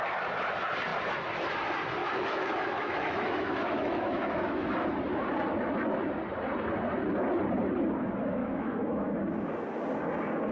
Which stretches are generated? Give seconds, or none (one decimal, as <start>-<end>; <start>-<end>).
2.0-4.7; 8.4-9.2